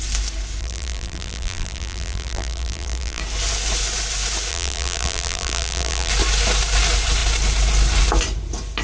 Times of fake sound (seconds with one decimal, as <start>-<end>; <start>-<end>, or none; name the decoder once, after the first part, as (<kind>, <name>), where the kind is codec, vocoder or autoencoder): 0.6-3.2 (vocoder, BigVGAN v2); 4.5-6.1